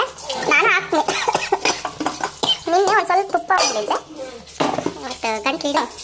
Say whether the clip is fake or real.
real